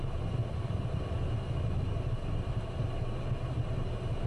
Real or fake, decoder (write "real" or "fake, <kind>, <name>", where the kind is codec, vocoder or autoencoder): real